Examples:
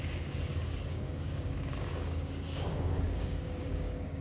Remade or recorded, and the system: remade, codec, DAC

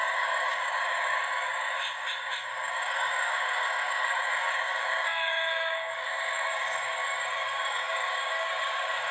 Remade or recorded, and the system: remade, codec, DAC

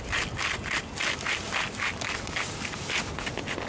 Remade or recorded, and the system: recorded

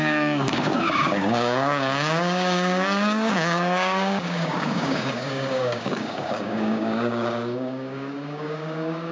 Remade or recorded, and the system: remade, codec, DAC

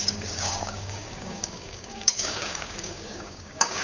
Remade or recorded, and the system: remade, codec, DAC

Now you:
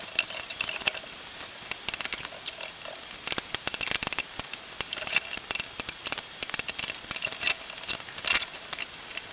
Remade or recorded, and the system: recorded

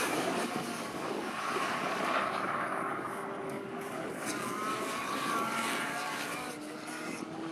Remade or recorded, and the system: remade, codec, DAC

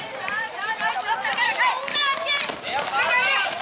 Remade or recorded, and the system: recorded